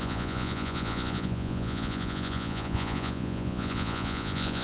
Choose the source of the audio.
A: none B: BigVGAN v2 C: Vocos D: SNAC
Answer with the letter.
C